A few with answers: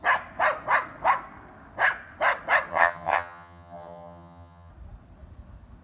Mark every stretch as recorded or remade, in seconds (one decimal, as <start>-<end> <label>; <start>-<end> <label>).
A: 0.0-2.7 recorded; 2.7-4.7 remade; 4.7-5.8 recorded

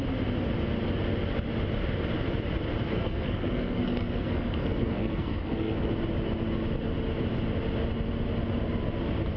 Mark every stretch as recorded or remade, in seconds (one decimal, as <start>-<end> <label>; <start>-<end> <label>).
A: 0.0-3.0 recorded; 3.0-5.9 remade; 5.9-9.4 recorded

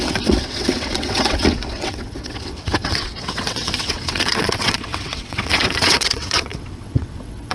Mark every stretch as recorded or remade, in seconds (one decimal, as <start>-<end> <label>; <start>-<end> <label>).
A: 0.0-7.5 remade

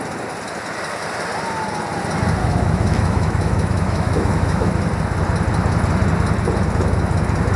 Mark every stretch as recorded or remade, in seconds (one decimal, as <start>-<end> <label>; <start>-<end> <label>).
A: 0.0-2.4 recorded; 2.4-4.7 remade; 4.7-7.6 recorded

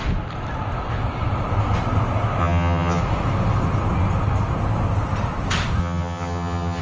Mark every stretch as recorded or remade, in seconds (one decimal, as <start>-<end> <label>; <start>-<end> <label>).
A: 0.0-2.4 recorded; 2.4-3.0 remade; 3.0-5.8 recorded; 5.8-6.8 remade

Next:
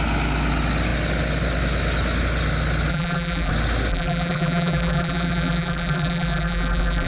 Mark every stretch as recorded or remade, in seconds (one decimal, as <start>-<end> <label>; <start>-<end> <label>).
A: 0.0-2.9 recorded; 2.9-3.5 remade; 3.5-3.9 recorded; 3.9-7.1 remade

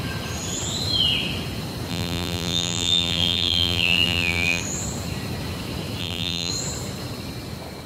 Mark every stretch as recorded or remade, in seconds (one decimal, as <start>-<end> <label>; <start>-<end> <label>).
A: 0.0-1.9 recorded; 1.9-4.6 remade; 4.6-6.0 recorded; 6.0-6.5 remade; 6.5-7.9 recorded

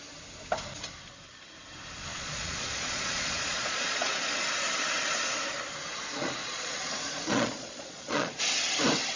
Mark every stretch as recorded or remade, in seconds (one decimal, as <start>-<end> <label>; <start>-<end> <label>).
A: 0.0-2.1 recorded; 2.1-4.4 remade; 4.4-6.4 recorded; 6.4-8.4 remade; 8.4-9.2 recorded